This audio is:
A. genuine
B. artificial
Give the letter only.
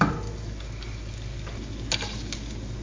A